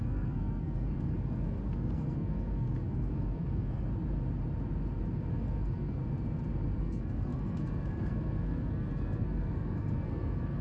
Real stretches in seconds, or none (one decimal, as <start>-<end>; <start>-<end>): 3.9-5.3; 6.0-6.8